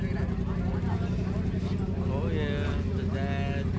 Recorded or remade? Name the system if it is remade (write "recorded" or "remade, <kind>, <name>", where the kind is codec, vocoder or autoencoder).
recorded